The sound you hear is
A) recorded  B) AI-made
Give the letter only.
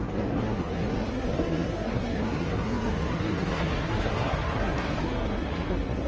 B